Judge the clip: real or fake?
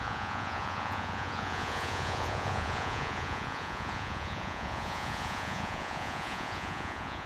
fake